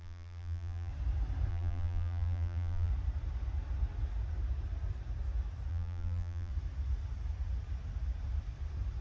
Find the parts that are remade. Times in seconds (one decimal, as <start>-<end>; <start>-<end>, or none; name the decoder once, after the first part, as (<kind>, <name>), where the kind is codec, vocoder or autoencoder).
0.0-0.9 (vocoder, BigVGAN v2); 1.5-2.9; 5.7-6.5